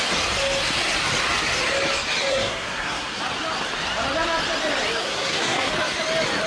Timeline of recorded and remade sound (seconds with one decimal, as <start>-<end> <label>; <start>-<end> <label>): 0.0-2.3 recorded; 2.3-3.2 remade; 3.2-5.0 recorded; 5.0-5.7 remade; 5.7-6.5 recorded